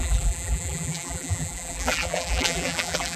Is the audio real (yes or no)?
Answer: no